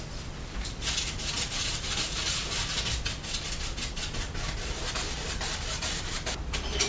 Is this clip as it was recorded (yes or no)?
yes